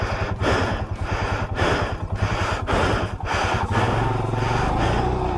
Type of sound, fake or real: real